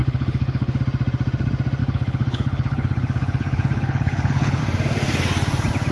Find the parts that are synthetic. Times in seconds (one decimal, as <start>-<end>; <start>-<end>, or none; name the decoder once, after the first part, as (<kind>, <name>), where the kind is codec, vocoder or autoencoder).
0.0-0.8 (codec, HILCodec); 1.8-4.6